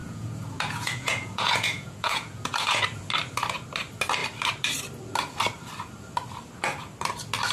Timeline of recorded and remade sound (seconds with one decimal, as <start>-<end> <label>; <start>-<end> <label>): 0.0-2.8 remade; 2.8-7.5 recorded